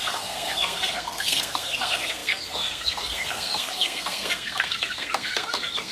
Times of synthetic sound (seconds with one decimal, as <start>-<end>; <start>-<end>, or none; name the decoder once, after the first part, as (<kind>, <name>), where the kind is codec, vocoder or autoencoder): 0.0-5.9 (codec, SNAC)